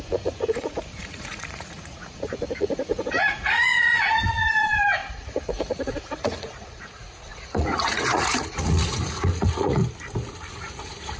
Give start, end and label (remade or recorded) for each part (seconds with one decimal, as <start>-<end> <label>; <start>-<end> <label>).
0.0-9.8 remade; 9.8-10.5 recorded; 10.5-11.2 remade